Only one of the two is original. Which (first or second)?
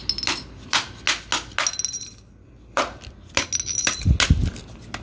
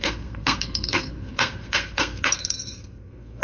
first